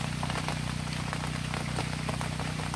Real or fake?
real